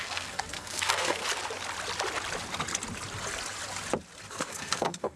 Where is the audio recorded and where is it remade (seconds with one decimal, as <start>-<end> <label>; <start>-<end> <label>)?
0.0-1.2 remade; 1.2-4.3 recorded; 4.3-5.2 remade